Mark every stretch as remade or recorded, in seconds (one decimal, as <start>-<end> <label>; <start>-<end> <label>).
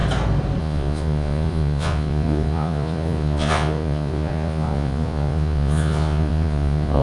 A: 0.0-0.6 recorded; 0.6-7.0 remade